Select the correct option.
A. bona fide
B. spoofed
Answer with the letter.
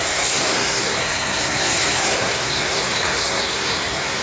B